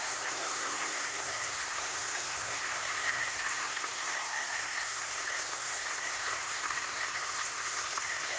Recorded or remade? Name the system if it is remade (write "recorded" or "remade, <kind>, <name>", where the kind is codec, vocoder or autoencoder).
remade, codec, SNAC